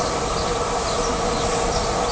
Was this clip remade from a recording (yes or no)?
no